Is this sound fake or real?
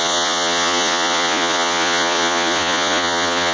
fake